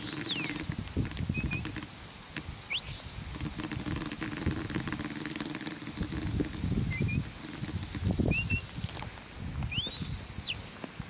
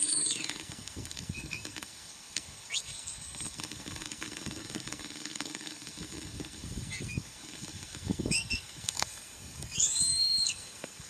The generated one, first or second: second